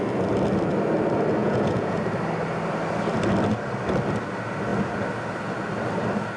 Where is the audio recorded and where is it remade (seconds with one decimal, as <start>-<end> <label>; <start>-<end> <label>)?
0.0-1.4 recorded; 1.4-2.0 remade; 2.0-6.4 recorded